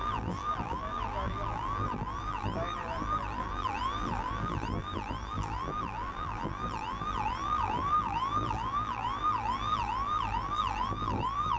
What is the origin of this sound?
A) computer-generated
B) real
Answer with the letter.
A